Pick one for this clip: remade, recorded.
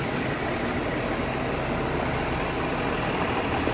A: recorded